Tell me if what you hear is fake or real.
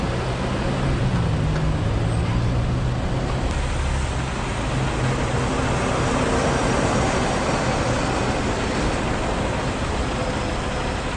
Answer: real